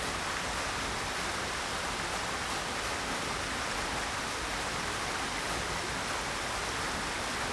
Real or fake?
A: real